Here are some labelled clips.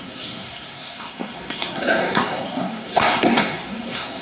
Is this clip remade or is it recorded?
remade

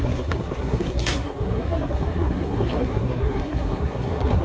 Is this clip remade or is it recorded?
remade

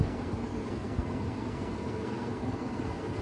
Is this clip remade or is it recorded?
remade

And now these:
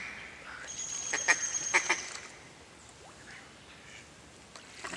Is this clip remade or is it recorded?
recorded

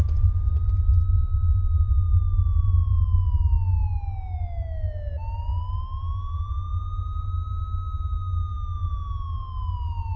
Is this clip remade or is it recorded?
recorded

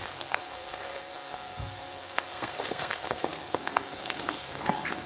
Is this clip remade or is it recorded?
remade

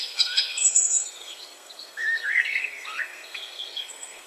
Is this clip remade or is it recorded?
remade